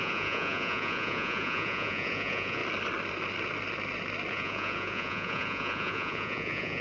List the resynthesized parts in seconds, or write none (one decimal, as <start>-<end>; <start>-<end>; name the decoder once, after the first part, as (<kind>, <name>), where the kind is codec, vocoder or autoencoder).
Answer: 0.0-2.6 (vocoder, Vocos); 4.3-6.8